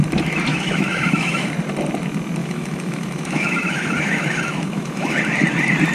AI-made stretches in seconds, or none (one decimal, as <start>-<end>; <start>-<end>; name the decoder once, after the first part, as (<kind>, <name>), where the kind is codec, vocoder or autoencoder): 0.5-1.5 (autoencoder, DAC-VAE); 2.4-5.2